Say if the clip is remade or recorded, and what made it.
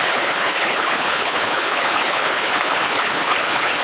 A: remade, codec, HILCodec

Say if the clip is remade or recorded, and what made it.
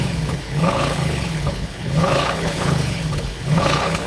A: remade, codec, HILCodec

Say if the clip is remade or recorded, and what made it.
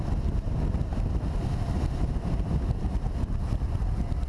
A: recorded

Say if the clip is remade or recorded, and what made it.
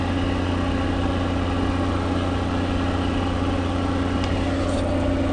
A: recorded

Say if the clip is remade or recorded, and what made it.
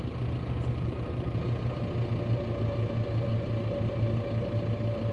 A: recorded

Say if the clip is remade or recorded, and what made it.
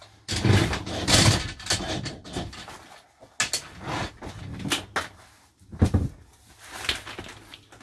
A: recorded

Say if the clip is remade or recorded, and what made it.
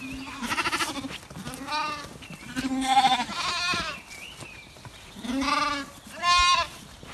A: recorded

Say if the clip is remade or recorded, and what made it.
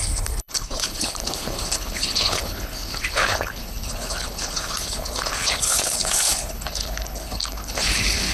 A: remade, codec, HILCodec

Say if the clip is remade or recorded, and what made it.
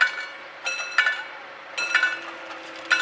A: recorded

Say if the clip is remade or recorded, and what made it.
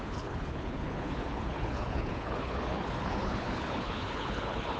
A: remade, codec, HILCodec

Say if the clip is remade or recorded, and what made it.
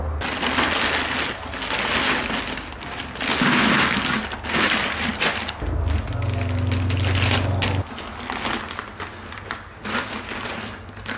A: recorded